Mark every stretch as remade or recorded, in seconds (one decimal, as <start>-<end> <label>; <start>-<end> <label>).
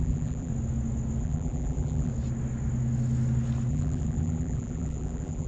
0.0-0.5 remade; 0.5-1.2 recorded; 1.2-2.1 remade; 2.1-3.7 recorded; 3.7-5.5 remade